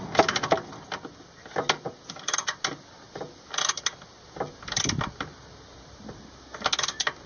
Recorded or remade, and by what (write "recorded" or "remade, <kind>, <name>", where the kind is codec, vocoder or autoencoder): recorded